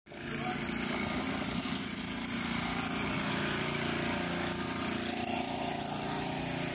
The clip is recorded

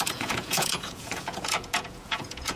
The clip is remade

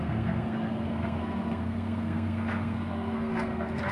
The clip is remade